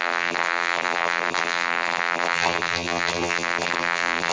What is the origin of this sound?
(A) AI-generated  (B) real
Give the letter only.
A